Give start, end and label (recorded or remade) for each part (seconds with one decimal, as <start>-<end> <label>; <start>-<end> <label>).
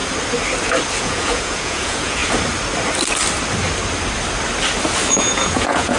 0.0-1.0 recorded; 1.0-2.2 remade; 2.2-5.1 recorded; 5.1-6.0 remade